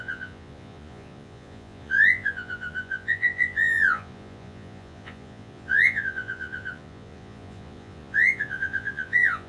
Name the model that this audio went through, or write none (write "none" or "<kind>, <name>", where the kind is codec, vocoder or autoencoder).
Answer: vocoder, Vocos